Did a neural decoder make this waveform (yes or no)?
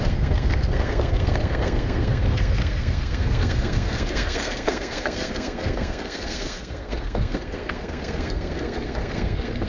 yes